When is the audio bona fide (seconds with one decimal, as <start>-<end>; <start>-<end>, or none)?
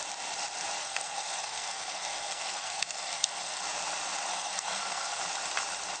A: 0.0-0.8; 3.6-4.3; 5.2-6.0